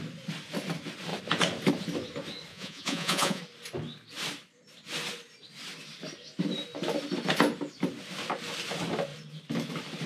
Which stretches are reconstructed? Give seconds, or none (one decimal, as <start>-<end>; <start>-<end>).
2.5-3.4